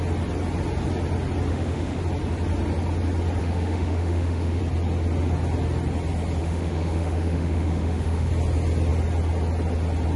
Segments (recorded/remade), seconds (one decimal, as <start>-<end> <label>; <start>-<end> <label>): 0.0-1.5 recorded; 1.5-2.0 remade; 2.0-3.4 recorded; 3.4-4.6 remade; 4.6-6.4 recorded; 6.4-8.3 remade; 8.3-10.2 recorded